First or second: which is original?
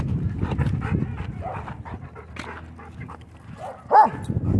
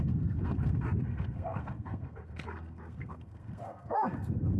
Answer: first